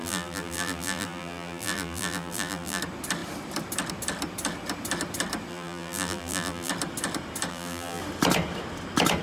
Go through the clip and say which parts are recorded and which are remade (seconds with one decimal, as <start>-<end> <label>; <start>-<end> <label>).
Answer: 0.0-2.8 remade; 2.8-5.5 recorded; 5.5-6.7 remade; 6.7-7.5 recorded; 7.5-8.0 remade; 8.0-9.2 recorded